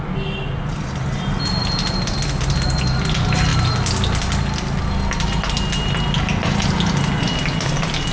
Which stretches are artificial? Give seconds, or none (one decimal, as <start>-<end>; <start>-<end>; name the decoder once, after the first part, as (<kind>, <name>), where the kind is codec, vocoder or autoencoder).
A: none